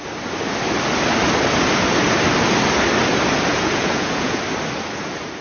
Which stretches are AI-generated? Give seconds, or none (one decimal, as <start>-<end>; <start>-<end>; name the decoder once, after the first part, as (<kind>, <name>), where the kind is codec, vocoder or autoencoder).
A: 3.5-4.4 (vocoder, Vocos)